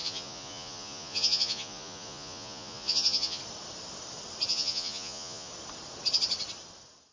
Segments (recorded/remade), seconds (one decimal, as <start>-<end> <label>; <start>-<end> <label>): 0.0-3.4 remade; 3.4-4.5 recorded; 4.5-5.5 remade; 5.5-7.1 recorded